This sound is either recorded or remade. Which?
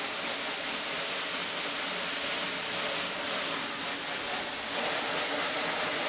recorded